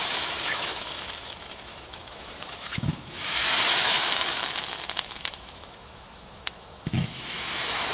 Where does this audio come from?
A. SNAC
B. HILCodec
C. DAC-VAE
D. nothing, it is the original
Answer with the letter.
C